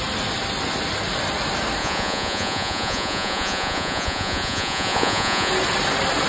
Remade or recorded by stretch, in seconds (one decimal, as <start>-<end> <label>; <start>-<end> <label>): 0.0-1.8 recorded; 1.8-5.5 remade; 5.5-6.3 recorded